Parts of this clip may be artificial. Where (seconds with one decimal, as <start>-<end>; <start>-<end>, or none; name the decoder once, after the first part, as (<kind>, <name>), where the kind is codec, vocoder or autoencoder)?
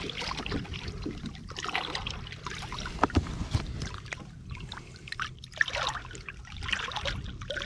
none